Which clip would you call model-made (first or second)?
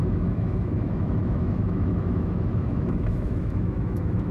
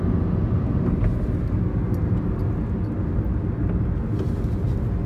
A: first